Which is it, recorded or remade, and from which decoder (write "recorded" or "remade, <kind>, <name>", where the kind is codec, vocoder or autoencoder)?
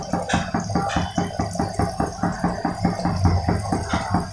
recorded